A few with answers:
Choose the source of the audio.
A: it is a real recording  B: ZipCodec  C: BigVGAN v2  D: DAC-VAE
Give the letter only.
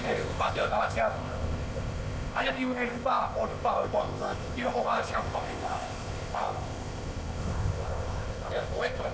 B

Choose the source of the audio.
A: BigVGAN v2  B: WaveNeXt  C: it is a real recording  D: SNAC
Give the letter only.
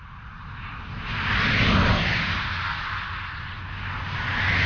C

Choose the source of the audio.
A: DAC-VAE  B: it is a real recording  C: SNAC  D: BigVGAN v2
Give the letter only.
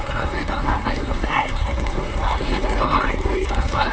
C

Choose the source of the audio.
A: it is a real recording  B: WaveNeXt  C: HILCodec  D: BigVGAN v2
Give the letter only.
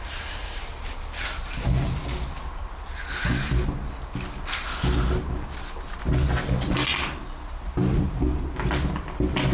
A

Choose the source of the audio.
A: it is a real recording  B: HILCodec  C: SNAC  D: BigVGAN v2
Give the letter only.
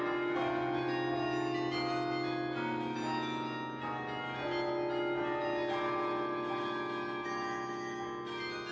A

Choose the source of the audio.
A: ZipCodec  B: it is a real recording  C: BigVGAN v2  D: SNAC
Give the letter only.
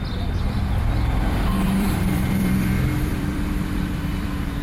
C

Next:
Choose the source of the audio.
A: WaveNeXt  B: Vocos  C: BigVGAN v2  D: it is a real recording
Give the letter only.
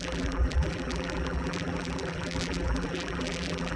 C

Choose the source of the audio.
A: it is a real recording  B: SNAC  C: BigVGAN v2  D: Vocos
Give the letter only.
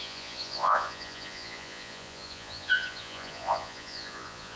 D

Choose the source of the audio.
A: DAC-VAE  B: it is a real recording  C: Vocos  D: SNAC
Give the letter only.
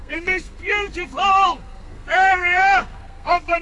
D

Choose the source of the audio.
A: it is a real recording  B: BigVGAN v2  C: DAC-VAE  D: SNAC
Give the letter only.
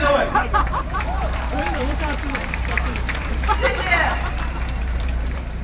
B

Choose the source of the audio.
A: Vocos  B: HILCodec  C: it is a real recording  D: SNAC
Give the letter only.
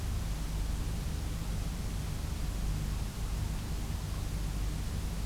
C